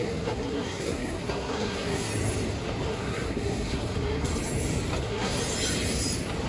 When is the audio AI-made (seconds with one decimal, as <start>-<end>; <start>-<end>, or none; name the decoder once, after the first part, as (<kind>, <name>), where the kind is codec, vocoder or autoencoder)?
0.0-2.1 (codec, SNAC); 2.9-4.3; 5.0-5.4